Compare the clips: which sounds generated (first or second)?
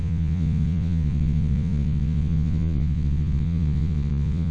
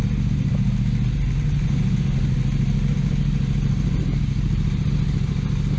first